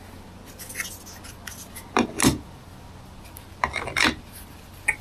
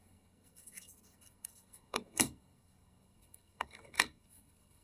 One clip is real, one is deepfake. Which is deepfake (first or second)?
second